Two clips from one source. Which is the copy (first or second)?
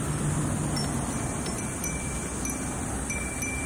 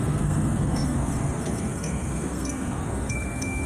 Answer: second